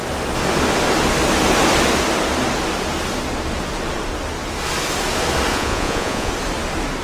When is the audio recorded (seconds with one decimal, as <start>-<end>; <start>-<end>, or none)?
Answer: 0.0-5.5; 6.3-7.0